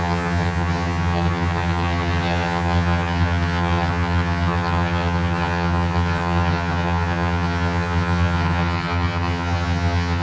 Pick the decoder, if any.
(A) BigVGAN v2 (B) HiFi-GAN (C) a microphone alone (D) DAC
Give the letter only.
B